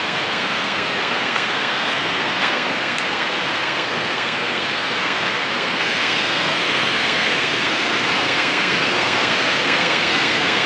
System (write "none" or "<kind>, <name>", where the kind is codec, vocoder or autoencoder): codec, SNAC